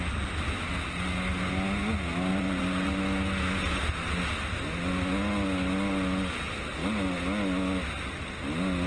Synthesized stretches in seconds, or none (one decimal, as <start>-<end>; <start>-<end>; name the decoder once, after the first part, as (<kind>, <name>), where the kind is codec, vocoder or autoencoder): 2.3-3.0 (vocoder, BigVGAN v2)